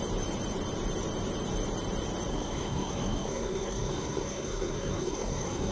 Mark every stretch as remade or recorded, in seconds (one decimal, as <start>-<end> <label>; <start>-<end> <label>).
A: 0.0-2.3 recorded; 2.3-5.7 remade